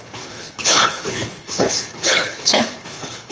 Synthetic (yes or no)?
yes